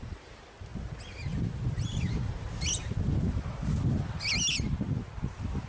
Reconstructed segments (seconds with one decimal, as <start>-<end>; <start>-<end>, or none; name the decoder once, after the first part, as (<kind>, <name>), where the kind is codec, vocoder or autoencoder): none